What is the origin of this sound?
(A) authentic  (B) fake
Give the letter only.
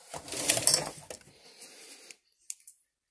A